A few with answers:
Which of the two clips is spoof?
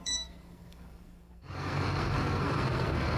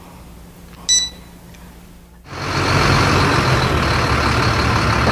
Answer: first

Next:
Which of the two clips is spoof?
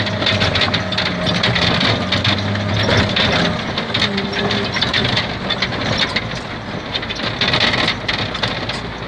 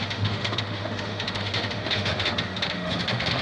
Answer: second